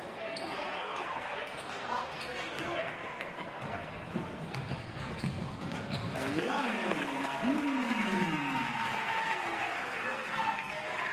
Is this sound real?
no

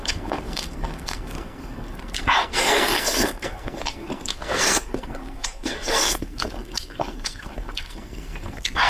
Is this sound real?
no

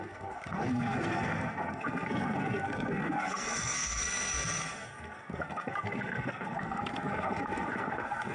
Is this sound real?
no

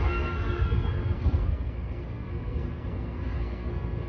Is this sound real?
no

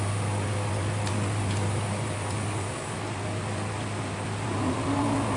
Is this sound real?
yes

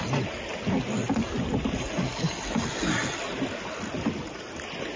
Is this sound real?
yes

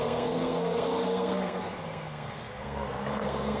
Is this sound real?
no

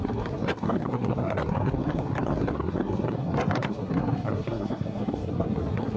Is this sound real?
no